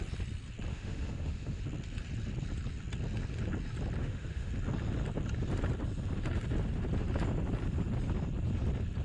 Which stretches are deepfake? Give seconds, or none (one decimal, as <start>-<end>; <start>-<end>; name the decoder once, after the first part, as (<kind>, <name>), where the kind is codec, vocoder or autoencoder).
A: 0.7-1.6 (autoencoder, DAC-VAE); 4.0-4.5